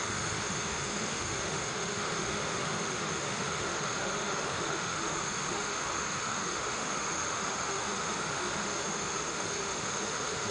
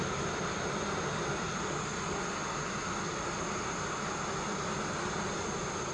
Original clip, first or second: second